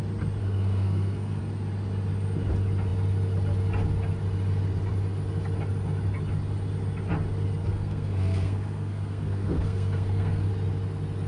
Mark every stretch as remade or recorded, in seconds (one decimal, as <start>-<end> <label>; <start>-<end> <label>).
0.0-0.4 recorded; 0.4-1.4 remade; 1.4-7.6 recorded; 7.6-10.5 remade; 10.5-11.3 recorded